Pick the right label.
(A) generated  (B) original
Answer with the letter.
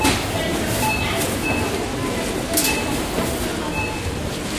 B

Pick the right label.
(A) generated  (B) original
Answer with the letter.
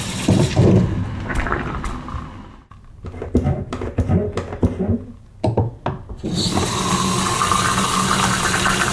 B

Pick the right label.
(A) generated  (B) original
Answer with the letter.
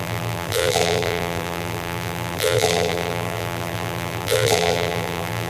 A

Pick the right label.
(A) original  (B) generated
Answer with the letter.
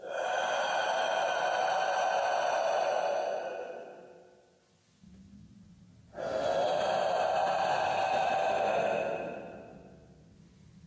A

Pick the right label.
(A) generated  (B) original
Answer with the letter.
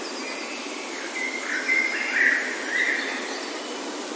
B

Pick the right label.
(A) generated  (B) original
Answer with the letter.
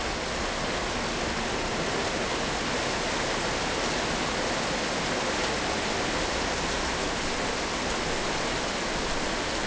B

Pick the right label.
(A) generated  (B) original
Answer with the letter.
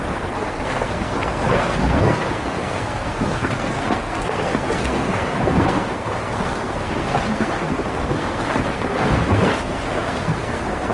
A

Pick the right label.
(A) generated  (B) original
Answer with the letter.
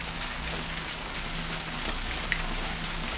A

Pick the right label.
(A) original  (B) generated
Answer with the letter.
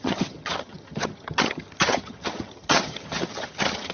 B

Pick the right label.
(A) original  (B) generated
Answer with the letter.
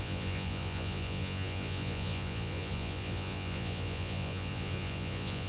B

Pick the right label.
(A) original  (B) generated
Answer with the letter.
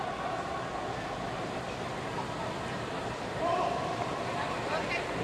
B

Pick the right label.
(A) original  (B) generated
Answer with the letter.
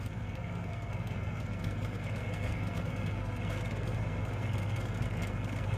B